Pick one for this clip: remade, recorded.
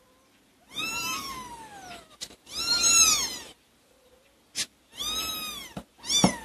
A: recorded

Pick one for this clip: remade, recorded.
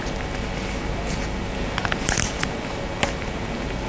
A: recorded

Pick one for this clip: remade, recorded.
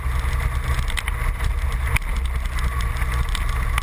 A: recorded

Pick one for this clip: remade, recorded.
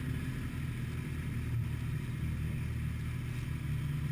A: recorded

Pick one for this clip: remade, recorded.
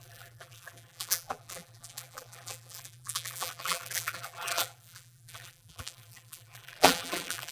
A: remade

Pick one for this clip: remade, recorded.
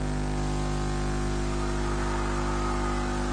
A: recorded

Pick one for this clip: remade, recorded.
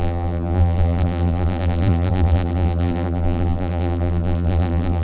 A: remade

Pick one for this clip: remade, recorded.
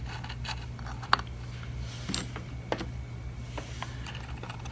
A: recorded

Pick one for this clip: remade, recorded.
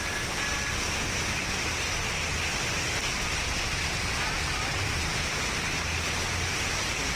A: recorded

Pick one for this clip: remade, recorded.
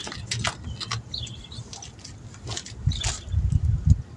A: recorded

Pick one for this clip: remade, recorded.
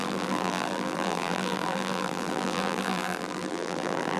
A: remade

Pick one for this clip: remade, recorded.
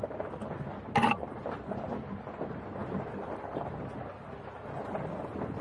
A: recorded